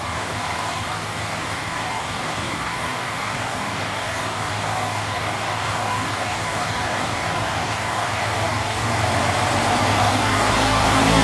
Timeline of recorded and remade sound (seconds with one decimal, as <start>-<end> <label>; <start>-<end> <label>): 0.0-8.9 remade; 8.9-9.8 recorded; 9.8-11.2 remade